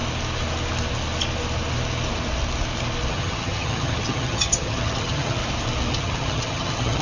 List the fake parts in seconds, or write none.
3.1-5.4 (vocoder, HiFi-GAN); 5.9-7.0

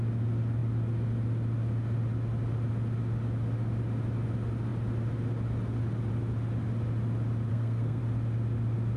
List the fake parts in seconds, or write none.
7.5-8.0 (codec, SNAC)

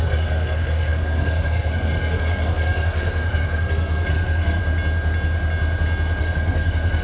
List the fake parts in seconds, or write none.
0.0-4.6 (codec, SNAC); 6.2-7.0

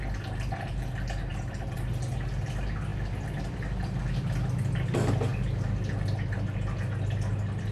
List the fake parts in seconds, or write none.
none

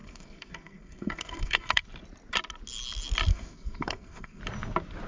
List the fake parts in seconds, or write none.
0.0-1.8 (codec, SNAC); 3.3-4.4